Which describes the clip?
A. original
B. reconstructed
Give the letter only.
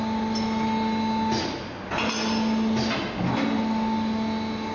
A